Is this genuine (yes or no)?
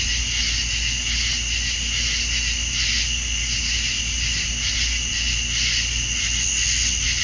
yes